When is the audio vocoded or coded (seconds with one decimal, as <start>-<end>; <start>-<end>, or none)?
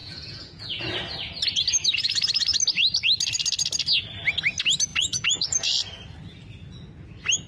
0.0-0.8; 4.9-5.7